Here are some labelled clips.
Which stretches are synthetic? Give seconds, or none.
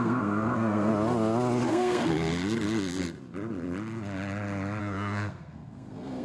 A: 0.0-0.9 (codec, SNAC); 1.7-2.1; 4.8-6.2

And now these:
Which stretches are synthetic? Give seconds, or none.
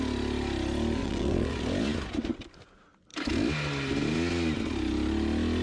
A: 1.0-1.6 (vocoder, WaveNeXt)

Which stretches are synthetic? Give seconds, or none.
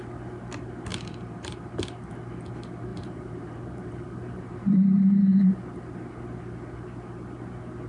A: 0.9-2.1 (vocoder, BigVGAN v2); 2.9-5.5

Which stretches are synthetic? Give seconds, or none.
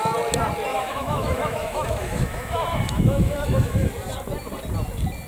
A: 0.7-3.9 (autoencoder, DAC-VAE)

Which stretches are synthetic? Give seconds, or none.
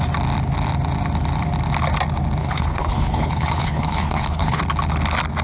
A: 2.4-4.6 (codec, HILCodec)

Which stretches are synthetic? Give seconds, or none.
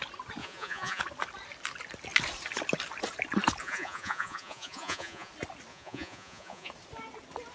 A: 0.4-1.0 (vocoder, Vocos); 3.6-5.3; 5.7-6.7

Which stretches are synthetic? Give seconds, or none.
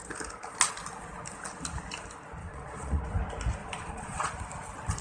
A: 2.4-3.0 (vocoder, Vocos); 3.6-4.3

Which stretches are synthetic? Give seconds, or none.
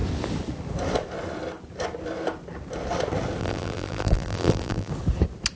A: 3.4-4.9 (vocoder, BigVGAN v2)